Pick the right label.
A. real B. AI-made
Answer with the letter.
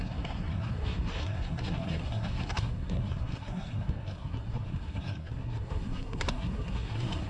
B